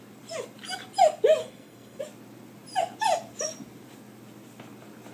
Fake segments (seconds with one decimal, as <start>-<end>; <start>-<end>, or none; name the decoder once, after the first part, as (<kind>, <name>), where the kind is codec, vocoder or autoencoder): 1.4-2.0 (codec, SNAC)